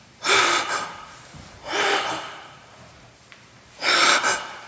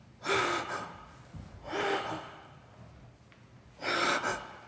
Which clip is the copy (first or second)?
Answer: first